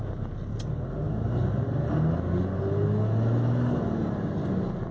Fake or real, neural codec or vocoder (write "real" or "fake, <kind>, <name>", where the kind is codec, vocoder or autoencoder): real